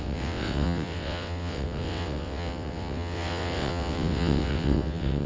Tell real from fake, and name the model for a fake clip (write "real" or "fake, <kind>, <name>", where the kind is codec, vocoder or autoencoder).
fake, vocoder, WaveNeXt